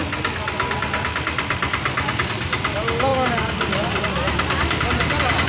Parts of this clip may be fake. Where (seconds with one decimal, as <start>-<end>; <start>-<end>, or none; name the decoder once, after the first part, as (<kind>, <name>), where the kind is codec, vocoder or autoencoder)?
none